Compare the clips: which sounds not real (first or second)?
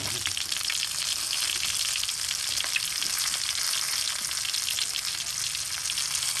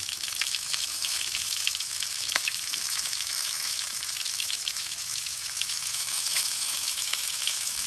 second